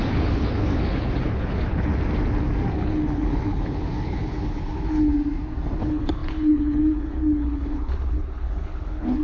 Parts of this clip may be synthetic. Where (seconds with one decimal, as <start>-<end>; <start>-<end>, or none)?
0.0-1.9; 2.7-5.1; 5.8-9.2